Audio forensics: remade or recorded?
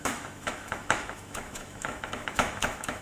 remade